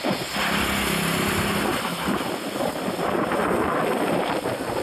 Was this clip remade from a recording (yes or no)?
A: no